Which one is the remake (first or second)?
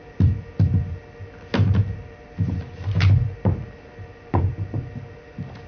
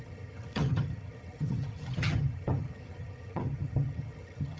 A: second